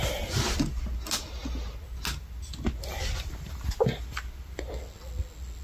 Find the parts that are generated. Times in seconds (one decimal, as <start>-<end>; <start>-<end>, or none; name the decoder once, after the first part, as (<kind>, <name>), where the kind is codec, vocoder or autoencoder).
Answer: none